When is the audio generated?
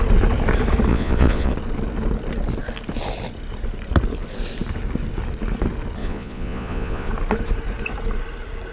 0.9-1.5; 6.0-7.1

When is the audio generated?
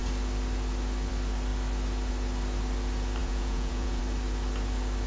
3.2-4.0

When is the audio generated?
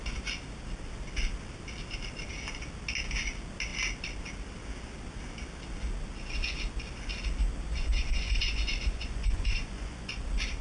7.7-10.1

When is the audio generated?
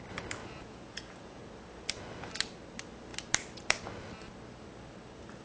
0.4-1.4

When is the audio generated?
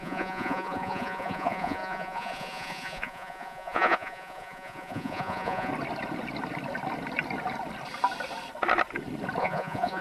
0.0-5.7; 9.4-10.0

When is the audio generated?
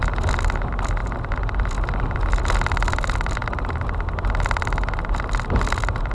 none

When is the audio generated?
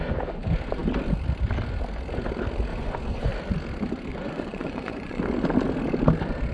2.7-3.3; 4.1-5.2